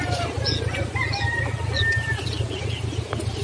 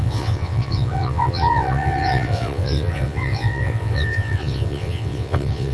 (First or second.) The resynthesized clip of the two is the second